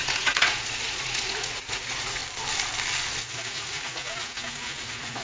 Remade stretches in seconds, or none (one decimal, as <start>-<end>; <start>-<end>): 0.0-2.2; 3.2-4.0; 4.8-5.2

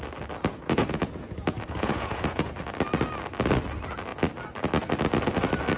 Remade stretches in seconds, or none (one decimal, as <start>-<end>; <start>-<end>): 0.5-2.5

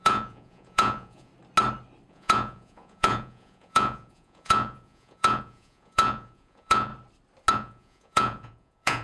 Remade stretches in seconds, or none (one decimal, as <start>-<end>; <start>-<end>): 0.0-1.3; 2.1-6.9; 7.5-9.0

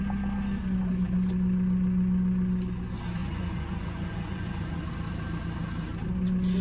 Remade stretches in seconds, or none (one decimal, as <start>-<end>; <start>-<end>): 3.2-4.9

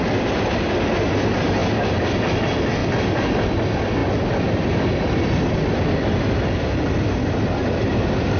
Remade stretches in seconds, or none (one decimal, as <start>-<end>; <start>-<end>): none

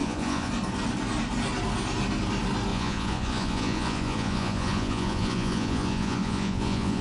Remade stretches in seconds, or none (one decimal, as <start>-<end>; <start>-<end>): 0.0-0.5; 2.7-7.0